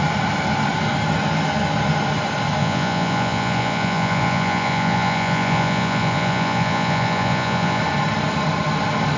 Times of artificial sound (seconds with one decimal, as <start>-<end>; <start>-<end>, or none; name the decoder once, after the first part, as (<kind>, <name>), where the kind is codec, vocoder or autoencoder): 2.6-7.8 (vocoder, Vocos)